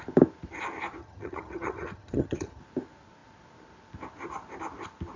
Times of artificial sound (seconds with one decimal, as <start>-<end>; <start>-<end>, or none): 1.0-2.6